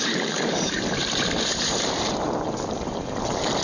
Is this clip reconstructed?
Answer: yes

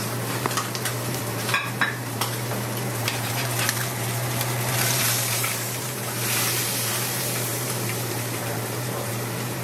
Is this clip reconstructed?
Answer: yes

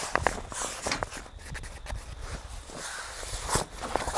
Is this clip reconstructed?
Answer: no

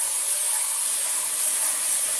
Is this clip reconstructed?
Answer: no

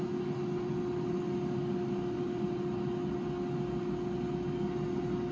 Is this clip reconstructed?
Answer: no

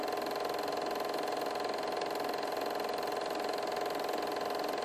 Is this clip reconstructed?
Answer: no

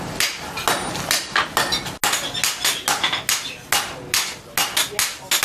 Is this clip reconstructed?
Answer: no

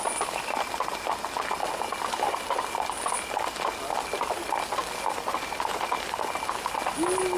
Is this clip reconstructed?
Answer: no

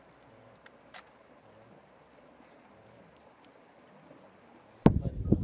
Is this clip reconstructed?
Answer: yes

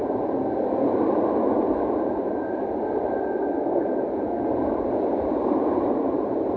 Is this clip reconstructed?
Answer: yes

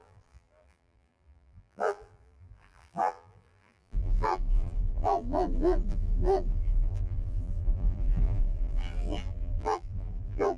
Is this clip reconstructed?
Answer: yes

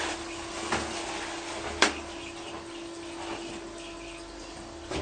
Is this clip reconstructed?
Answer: no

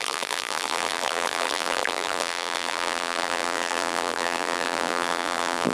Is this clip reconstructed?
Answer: yes